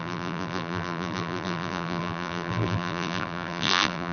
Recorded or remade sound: remade